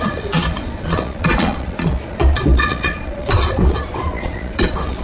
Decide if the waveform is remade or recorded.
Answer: remade